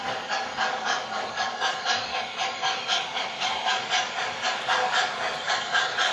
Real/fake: fake